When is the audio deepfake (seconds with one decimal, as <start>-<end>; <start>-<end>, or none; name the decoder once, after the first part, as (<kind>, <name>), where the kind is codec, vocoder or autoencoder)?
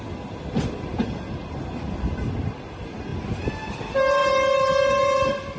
none